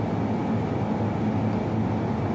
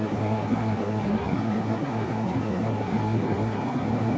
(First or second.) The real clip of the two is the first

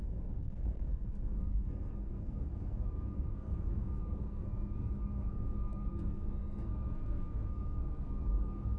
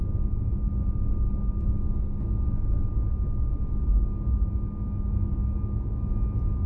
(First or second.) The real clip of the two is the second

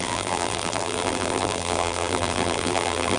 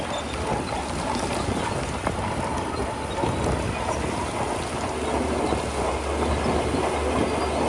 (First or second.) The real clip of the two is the second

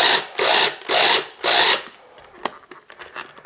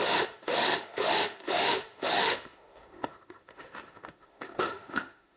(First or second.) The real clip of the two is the first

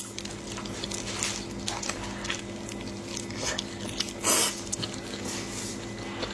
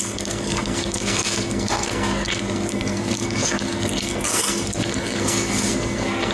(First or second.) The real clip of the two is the first